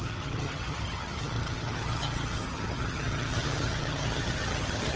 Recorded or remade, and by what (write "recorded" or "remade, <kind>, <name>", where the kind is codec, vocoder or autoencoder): remade, vocoder, HiFi-GAN